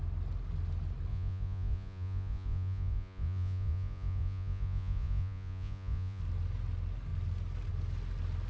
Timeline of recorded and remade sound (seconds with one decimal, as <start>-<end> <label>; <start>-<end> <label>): 0.0-1.1 recorded; 1.1-6.2 remade; 6.2-8.5 recorded